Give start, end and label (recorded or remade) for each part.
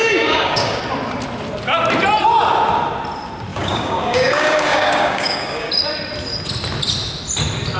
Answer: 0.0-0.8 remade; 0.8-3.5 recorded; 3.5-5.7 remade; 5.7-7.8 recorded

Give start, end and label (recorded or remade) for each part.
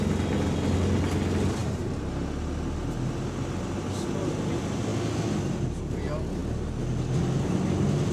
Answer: 0.0-8.1 recorded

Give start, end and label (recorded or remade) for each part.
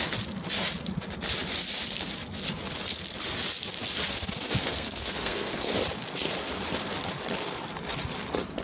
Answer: 0.0-4.6 recorded; 4.6-5.7 remade; 5.7-8.6 recorded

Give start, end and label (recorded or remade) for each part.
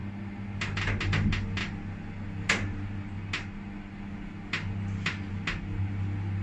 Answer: 0.0-6.4 recorded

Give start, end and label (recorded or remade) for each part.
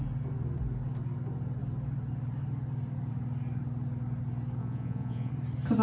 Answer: 0.0-4.6 recorded; 4.6-5.3 remade; 5.3-5.8 recorded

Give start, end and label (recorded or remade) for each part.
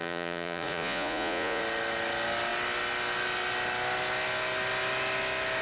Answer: 0.0-1.6 remade; 1.6-5.6 recorded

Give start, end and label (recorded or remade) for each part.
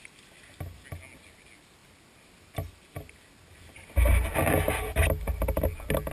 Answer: 0.0-6.1 recorded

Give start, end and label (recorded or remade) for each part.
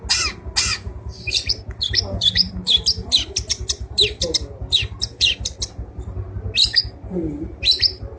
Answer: 0.0-1.1 recorded; 1.1-2.5 remade; 2.5-3.5 recorded; 3.5-5.7 remade; 5.7-8.2 recorded